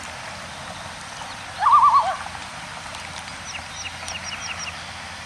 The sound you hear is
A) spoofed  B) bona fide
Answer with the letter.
B